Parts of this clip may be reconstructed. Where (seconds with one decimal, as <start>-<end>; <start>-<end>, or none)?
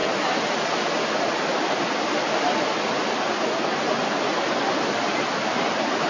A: none